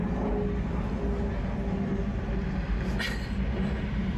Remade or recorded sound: recorded